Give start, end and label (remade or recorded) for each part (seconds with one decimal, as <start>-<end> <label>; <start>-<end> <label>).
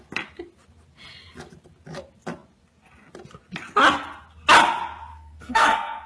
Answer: 0.0-5.1 recorded; 5.1-6.1 remade